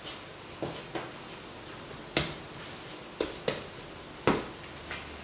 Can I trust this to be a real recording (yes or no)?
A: yes